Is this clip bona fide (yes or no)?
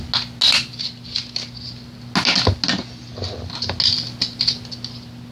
yes